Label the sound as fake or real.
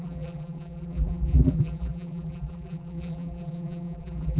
fake